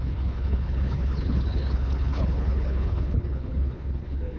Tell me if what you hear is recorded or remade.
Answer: remade